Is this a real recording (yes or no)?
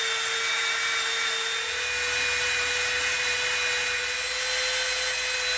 yes